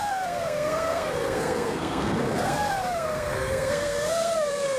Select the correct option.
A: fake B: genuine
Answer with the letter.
A